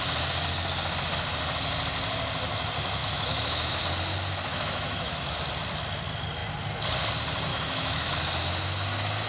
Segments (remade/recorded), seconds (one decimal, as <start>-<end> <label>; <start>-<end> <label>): 0.0-3.0 recorded; 3.0-3.8 remade; 3.8-4.5 recorded; 4.5-5.4 remade; 5.4-7.5 recorded; 7.5-8.1 remade; 8.1-9.3 recorded